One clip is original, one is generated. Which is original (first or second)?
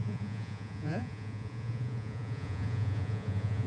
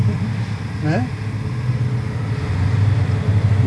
second